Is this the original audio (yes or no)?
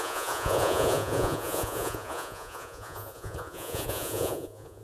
no